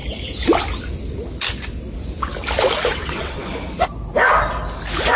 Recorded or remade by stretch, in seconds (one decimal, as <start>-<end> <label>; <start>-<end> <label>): 0.0-2.9 recorded; 2.9-3.5 remade; 3.5-5.2 recorded